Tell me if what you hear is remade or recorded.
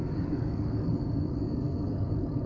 remade